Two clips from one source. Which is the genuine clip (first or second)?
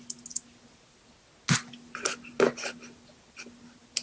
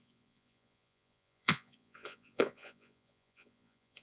first